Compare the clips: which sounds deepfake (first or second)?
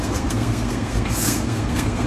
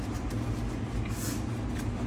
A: first